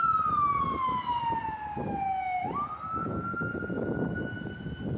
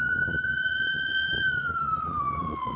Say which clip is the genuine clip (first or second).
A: first